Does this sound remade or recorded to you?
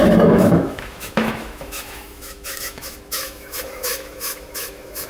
remade